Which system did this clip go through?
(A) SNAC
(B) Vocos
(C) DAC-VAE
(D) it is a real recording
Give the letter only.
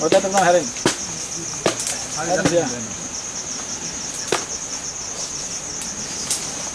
D